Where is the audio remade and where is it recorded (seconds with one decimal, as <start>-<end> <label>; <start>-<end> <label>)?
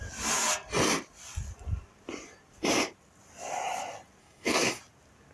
0.0-4.2 recorded; 4.2-4.8 remade; 4.8-5.3 recorded